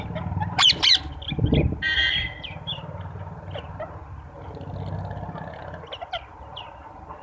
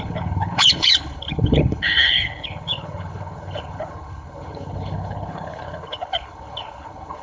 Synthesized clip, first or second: second